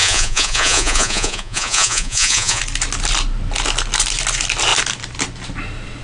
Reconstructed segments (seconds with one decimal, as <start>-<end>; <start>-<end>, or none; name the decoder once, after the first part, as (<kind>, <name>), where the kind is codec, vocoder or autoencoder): 0.0-2.6 (vocoder, Vocos)